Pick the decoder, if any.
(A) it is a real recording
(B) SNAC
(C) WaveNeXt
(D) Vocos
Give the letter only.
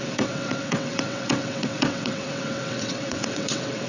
C